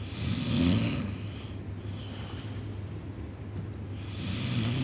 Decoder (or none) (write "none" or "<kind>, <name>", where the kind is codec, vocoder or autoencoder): none